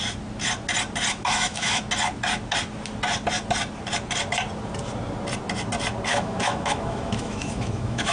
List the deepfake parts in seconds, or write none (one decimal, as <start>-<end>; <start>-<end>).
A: 1.1-1.8; 6.1-8.1